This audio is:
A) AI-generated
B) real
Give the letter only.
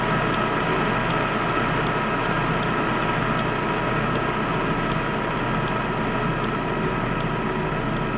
B